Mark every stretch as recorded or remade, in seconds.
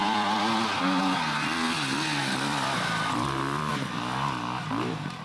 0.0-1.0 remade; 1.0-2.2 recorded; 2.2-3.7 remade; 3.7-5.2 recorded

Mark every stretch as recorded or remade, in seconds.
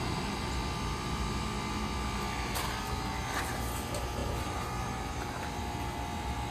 0.0-6.5 recorded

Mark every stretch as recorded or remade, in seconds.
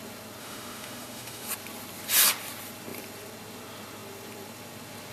0.0-0.4 recorded; 0.4-1.5 remade; 1.5-5.1 recorded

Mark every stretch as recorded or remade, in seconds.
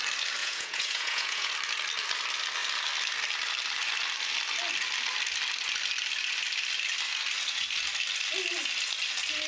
0.0-0.4 recorded; 0.4-1.5 remade; 1.5-9.5 recorded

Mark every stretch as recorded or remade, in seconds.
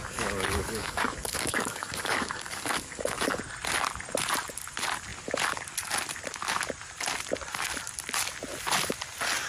0.0-3.4 remade; 3.4-9.5 recorded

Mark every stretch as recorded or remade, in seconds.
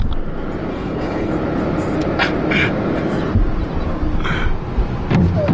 0.0-0.7 recorded; 0.7-1.3 remade; 1.3-5.5 recorded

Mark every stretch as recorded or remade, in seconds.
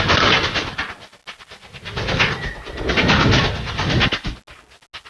0.0-5.1 recorded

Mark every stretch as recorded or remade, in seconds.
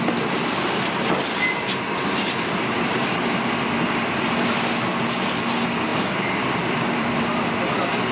0.0-5.9 recorded; 5.9-7.1 remade; 7.1-8.1 recorded